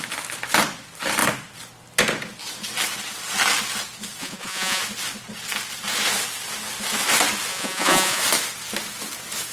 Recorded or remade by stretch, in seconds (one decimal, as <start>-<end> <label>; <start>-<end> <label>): 0.0-4.2 recorded; 4.2-4.8 remade; 4.8-7.5 recorded; 7.5-8.2 remade; 8.2-9.5 recorded